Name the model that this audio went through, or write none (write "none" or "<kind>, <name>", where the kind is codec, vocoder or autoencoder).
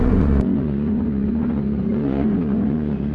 vocoder, Vocos